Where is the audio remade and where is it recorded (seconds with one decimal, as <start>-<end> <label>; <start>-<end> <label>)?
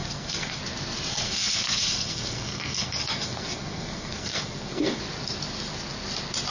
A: 0.0-0.6 remade; 0.6-1.1 recorded; 1.1-5.0 remade; 5.0-6.5 recorded